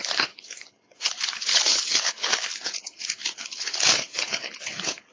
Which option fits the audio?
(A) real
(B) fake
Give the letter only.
B